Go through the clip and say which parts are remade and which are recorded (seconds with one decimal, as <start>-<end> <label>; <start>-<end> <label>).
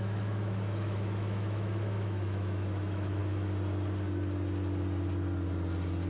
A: 0.0-3.2 remade; 3.2-6.1 recorded